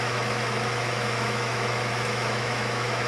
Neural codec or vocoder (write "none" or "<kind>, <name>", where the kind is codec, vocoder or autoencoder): autoencoder, DAC-VAE